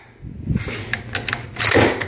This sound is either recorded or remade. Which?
recorded